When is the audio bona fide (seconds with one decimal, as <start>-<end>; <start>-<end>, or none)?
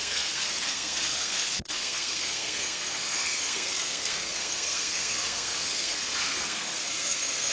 none